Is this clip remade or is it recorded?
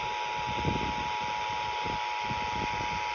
recorded